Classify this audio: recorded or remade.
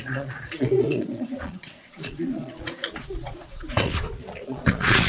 remade